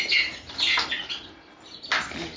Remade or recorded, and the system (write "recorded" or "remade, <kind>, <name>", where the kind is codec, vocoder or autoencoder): recorded